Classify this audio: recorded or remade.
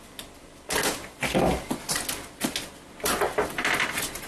recorded